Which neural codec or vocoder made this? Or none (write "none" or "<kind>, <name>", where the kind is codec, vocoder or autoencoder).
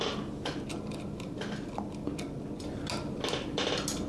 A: none